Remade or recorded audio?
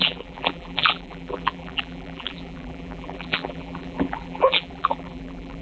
remade